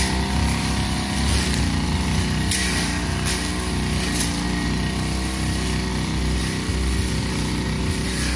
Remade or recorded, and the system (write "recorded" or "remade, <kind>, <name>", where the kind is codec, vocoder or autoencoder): recorded